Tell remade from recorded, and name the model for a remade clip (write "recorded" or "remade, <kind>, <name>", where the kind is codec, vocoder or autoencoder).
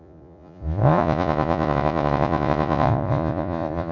remade, vocoder, Vocos